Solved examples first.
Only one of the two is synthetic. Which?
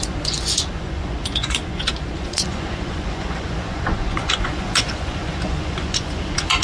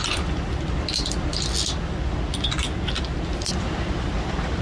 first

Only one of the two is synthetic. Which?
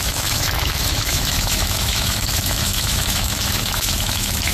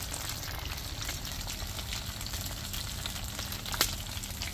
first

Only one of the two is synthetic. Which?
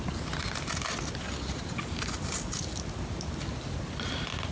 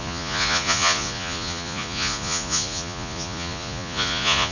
second